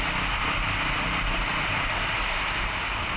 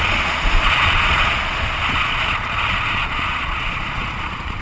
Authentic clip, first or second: first